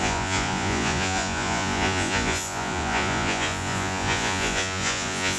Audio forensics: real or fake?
fake